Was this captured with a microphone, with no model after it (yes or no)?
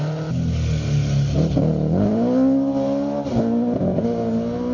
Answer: yes